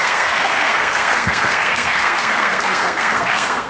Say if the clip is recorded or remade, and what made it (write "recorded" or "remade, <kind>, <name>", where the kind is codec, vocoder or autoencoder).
remade, codec, SNAC